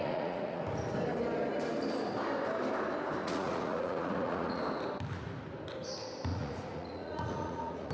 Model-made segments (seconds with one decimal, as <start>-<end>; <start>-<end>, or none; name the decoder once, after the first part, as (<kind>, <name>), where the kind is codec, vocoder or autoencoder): 0.0-0.6 (vocoder, Vocos); 3.2-4.6; 6.3-7.9